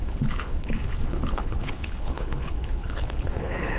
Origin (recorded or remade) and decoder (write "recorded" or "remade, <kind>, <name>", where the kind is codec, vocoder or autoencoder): remade, codec, HILCodec